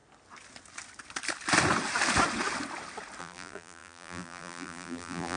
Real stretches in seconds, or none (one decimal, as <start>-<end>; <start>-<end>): 0.0-3.2